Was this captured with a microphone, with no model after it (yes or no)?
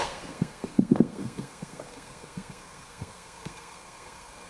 no